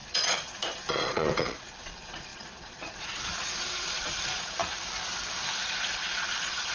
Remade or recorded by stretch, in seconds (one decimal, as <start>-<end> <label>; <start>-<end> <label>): 0.0-4.6 remade; 4.6-5.7 recorded; 5.7-6.7 remade